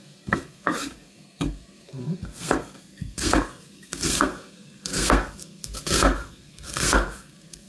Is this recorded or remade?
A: remade